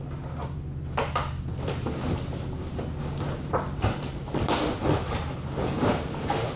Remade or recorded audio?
recorded